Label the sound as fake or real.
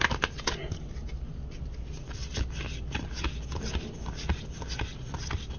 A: real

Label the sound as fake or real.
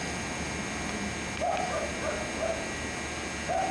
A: real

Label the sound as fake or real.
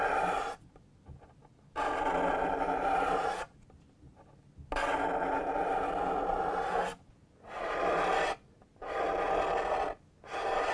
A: real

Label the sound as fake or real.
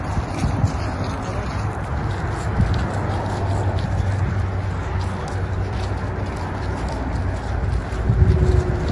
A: real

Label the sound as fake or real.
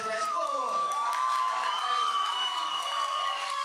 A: fake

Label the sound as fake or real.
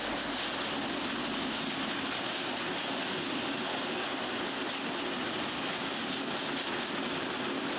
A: real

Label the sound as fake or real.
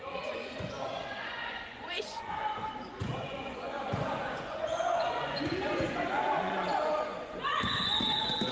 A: fake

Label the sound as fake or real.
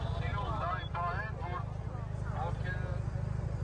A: real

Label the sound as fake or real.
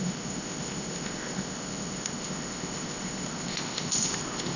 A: fake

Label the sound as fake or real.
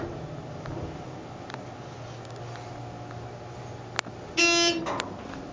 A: real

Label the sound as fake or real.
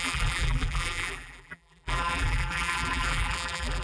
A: fake